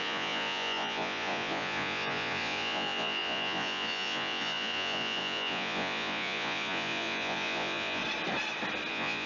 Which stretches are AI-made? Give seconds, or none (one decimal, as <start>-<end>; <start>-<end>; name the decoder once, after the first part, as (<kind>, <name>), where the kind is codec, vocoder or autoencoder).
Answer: 0.0-8.0 (vocoder, Vocos); 8.9-9.3